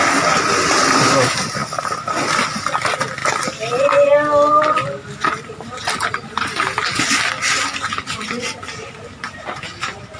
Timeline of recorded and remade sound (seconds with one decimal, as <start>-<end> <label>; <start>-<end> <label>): 0.0-10.2 recorded